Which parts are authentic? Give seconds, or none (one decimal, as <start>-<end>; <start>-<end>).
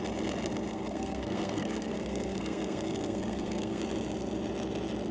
0.0-0.7; 3.8-5.1